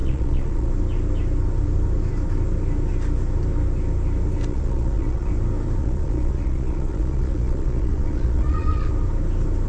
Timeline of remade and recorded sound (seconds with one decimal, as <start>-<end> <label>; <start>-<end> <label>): 0.0-0.7 remade; 0.7-4.5 recorded; 4.5-5.3 remade; 5.3-5.8 recorded; 5.8-8.9 remade; 8.9-9.7 recorded